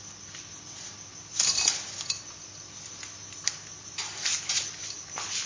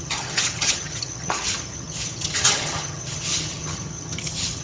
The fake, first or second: second